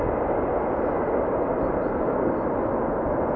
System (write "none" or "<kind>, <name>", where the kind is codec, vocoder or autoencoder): none